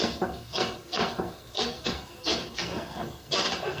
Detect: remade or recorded remade